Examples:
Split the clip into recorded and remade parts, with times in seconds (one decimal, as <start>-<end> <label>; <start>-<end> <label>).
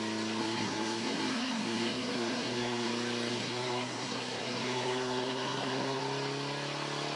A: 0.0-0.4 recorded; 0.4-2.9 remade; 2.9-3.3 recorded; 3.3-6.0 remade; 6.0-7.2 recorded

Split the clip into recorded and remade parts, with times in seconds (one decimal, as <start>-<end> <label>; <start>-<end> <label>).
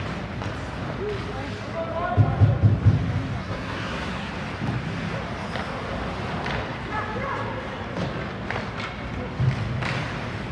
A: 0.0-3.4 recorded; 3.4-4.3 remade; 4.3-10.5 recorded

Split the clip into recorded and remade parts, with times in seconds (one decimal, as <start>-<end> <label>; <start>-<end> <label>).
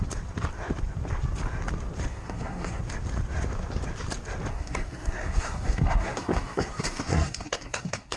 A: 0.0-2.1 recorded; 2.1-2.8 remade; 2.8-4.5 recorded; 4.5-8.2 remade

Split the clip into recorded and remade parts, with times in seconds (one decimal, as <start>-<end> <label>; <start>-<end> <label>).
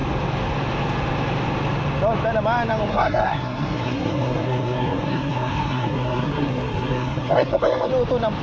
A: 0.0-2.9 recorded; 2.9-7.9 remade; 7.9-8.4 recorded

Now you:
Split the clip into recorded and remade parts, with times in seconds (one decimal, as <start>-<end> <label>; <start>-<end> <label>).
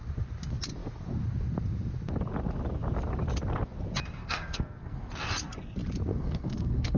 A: 0.0-4.2 recorded; 4.2-5.1 remade; 5.1-6.1 recorded; 6.1-7.0 remade